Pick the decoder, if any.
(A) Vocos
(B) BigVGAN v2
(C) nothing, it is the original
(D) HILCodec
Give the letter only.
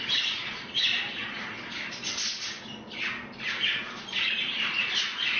C